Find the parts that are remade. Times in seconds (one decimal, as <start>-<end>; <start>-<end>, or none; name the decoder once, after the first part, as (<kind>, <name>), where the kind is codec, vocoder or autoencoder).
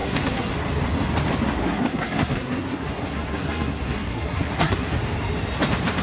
0.0-0.5 (codec, SNAC); 1.6-4.9